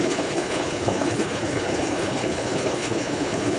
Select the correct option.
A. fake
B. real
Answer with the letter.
A